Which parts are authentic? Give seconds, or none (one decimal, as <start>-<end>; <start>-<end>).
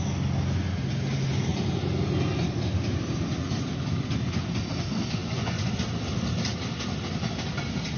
0.0-5.2; 5.7-8.0